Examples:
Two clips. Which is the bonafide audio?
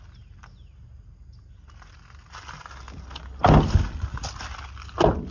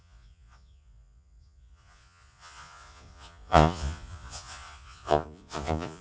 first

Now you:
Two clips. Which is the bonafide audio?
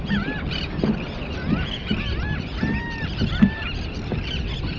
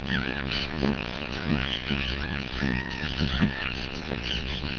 first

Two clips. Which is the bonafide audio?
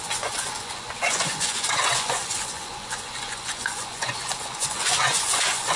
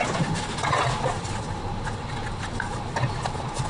second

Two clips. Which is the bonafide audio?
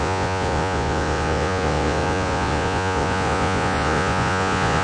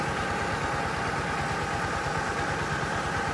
second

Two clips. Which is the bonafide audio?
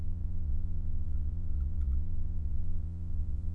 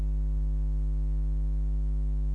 second